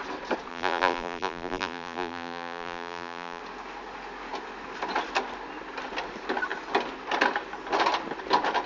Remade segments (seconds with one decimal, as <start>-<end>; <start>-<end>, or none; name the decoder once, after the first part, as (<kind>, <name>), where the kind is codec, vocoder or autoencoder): 0.5-3.4 (vocoder, BigVGAN v2)